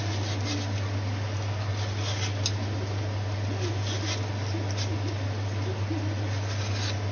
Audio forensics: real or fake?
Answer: real